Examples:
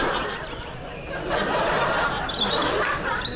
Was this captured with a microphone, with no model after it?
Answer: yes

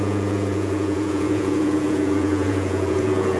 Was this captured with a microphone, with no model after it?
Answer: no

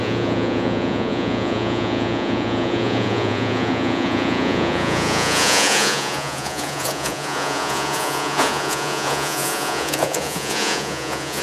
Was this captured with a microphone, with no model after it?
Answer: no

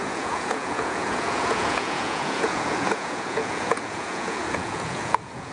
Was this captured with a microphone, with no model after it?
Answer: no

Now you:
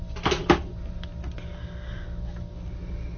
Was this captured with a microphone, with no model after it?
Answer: yes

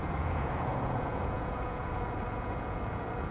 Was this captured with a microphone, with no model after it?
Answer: no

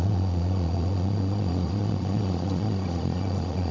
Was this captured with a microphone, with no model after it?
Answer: no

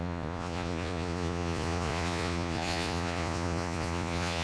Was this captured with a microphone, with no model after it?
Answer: no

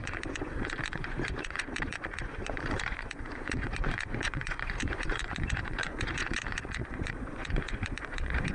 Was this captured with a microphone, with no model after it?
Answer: no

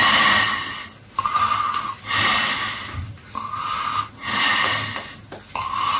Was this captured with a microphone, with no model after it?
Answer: yes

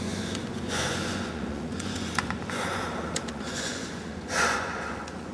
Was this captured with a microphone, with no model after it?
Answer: no